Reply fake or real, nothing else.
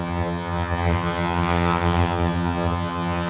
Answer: fake